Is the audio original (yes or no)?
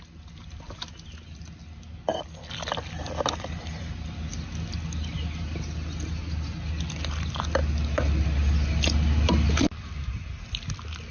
yes